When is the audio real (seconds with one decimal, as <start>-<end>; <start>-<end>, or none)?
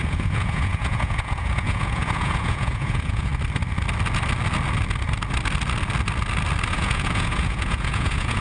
3.3-6.7